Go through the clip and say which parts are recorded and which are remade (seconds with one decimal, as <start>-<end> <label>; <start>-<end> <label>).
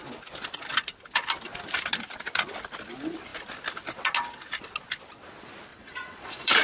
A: 0.0-5.7 recorded; 5.7-6.6 remade